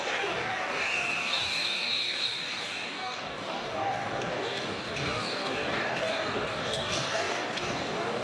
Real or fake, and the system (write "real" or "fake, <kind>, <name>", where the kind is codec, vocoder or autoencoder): fake, codec, DAC